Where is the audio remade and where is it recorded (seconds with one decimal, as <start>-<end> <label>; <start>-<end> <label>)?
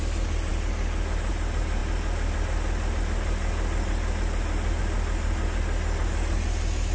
0.0-6.9 recorded